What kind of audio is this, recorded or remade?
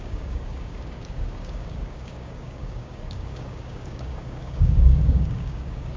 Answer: remade